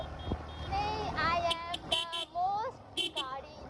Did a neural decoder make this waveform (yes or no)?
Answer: no